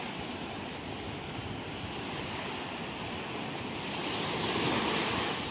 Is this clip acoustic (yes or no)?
yes